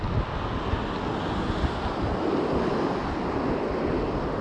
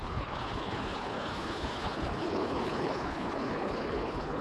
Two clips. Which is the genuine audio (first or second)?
first